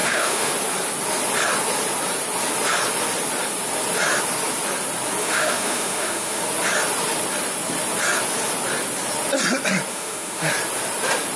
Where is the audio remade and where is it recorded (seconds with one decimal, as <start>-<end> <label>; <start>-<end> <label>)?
0.0-0.5 remade; 0.5-5.2 recorded; 5.2-6.4 remade; 6.4-9.9 recorded; 9.9-10.5 remade; 10.5-11.4 recorded